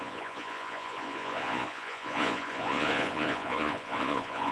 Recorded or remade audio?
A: remade